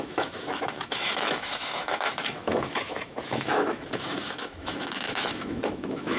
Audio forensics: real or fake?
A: fake